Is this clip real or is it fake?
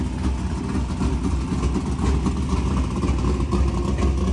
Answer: real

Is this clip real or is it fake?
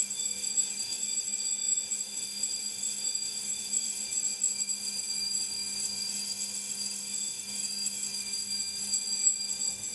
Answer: fake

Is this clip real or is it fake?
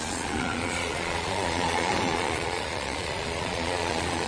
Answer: fake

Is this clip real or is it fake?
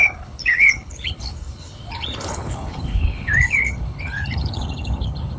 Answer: fake